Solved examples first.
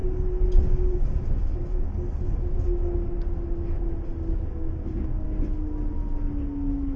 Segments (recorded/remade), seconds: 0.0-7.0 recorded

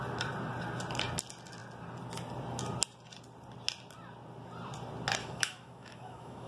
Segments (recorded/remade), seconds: 0.0-5.2 recorded; 5.2-6.5 remade